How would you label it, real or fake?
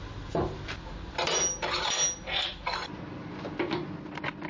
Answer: real